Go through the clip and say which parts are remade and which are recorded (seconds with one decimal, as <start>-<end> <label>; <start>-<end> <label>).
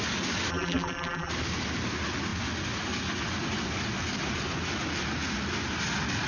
0.0-0.5 recorded; 0.5-1.3 remade; 1.3-6.3 recorded